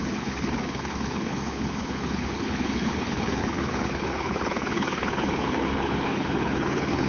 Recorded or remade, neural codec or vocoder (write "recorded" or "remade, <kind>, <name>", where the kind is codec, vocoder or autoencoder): remade, codec, HILCodec